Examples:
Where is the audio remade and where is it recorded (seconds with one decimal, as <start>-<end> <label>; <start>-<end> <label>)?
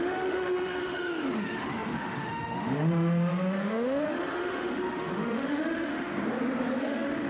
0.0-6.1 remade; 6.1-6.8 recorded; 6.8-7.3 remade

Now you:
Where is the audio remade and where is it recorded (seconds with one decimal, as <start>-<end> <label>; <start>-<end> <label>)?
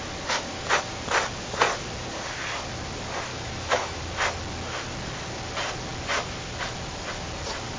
0.0-3.3 recorded; 3.3-4.0 remade; 4.0-7.8 recorded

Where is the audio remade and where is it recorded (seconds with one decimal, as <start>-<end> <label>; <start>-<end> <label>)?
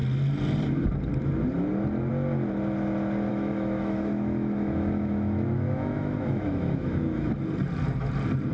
0.0-3.3 recorded; 3.3-7.3 remade; 7.3-8.5 recorded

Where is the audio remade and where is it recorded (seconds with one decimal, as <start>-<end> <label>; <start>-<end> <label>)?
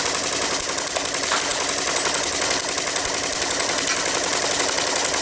0.0-5.2 recorded